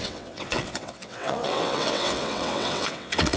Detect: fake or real fake